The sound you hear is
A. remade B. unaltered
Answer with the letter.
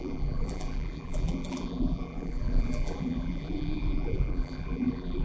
A